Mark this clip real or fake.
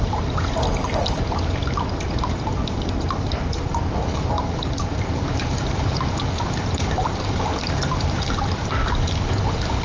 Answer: fake